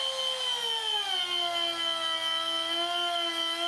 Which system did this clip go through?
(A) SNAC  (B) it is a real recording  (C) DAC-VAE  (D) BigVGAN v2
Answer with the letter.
B